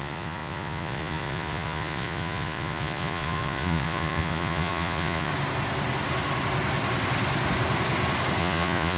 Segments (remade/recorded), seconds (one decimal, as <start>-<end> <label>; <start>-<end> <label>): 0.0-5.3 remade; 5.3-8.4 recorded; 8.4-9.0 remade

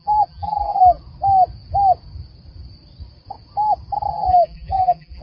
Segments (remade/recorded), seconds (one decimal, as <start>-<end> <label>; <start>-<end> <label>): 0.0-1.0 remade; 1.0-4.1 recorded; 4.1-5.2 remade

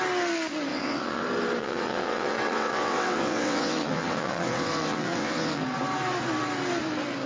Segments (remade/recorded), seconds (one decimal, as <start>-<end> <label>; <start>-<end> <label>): 0.0-0.7 recorded; 0.7-1.2 remade; 1.2-1.6 recorded; 1.6-5.6 remade; 5.6-7.3 recorded

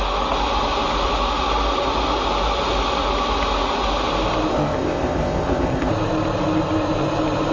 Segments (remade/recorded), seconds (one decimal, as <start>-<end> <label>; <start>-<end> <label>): 0.0-4.5 recorded; 4.5-5.9 remade; 5.9-7.5 recorded

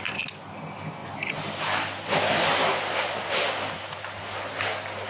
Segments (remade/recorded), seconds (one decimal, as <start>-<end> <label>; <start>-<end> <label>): 0.0-5.1 recorded

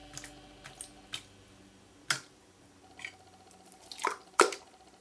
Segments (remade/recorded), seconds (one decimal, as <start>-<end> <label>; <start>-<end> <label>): 0.0-5.0 recorded